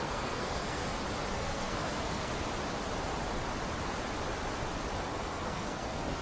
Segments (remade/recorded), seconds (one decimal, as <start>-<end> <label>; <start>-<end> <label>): 0.0-0.8 remade; 0.8-1.3 recorded; 1.3-2.3 remade; 2.3-5.1 recorded; 5.1-6.2 remade